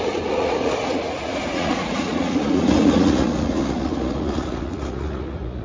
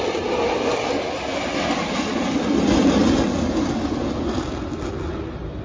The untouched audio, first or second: second